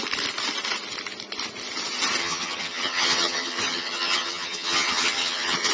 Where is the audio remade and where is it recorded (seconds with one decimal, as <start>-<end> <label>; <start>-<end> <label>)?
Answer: 0.0-2.2 recorded; 2.2-5.7 remade